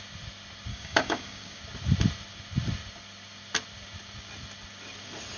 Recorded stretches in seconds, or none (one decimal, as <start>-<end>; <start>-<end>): 0.0-0.7; 1.6-5.4